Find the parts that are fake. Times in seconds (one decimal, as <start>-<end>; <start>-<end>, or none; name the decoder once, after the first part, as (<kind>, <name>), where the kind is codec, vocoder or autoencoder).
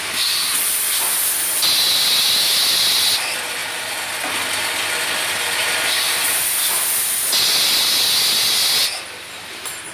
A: none